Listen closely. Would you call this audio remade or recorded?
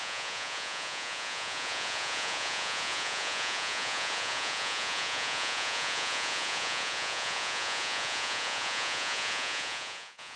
remade